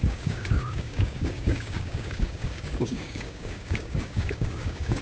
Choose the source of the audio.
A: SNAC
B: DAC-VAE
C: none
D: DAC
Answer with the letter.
D